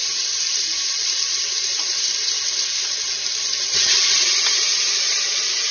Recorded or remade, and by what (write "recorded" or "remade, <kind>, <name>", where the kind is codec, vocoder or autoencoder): remade, vocoder, BigVGAN v2